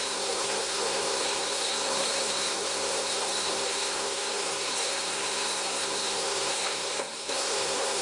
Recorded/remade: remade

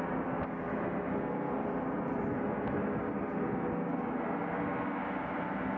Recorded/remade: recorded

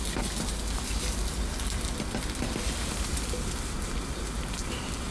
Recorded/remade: recorded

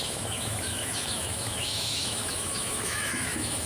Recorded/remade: remade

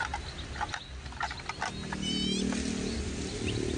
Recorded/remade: recorded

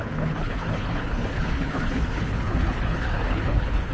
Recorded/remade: remade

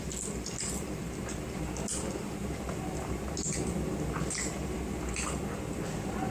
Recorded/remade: recorded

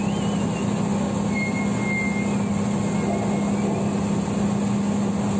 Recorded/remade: recorded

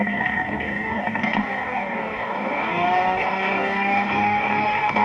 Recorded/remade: remade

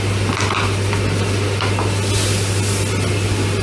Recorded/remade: recorded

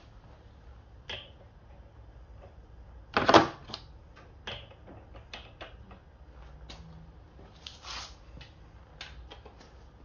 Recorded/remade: recorded